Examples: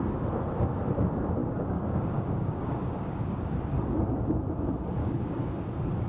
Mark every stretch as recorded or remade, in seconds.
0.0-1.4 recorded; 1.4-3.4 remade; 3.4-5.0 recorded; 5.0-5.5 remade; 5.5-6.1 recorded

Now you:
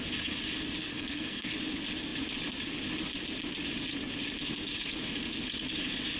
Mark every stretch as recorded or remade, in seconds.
0.0-0.9 recorded; 0.9-1.5 remade; 1.5-6.2 recorded

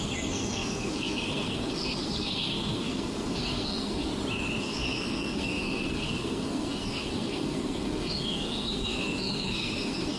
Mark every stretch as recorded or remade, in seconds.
0.0-4.1 remade; 4.1-4.6 recorded; 4.6-10.2 remade

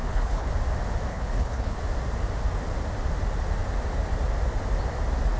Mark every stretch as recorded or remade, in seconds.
0.0-0.5 remade; 0.5-1.1 recorded; 1.1-1.8 remade; 1.8-5.4 recorded

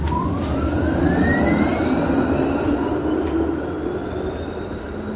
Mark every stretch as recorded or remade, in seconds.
0.0-5.2 recorded

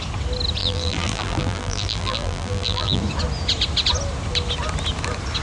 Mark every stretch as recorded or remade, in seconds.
0.0-0.6 recorded; 0.6-3.0 remade; 3.0-5.4 recorded

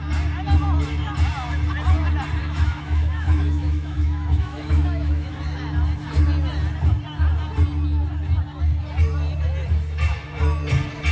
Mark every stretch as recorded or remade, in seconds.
0.0-2.4 recorded; 2.4-5.3 remade; 5.3-11.1 recorded